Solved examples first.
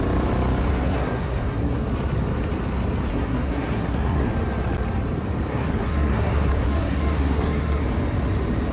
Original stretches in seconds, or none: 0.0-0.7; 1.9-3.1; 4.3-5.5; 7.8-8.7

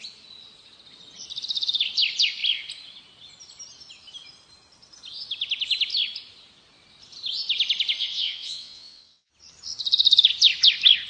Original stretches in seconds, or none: 0.0-8.0; 9.3-11.1

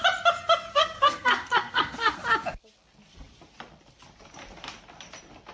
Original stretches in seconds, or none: 0.0-0.7; 2.2-5.5

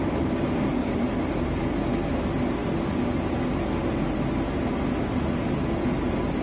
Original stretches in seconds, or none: 0.0-0.8; 1.4-6.4

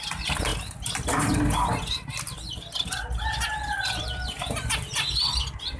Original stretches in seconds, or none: 0.0-5.8

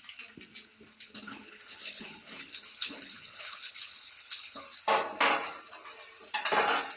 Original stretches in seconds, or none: 0.0-0.9; 4.6-7.0